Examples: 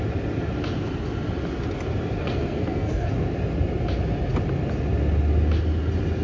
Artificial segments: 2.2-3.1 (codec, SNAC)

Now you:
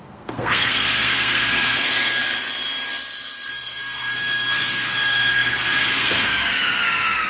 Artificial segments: 0.0-2.2 (codec, SNAC); 3.5-7.3

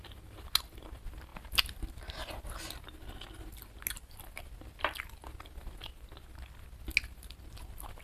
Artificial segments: none

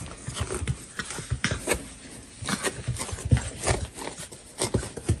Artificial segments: none

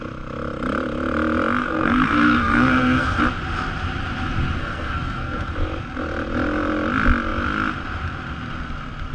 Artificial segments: 1.6-3.2 (codec, SNAC); 4.6-5.5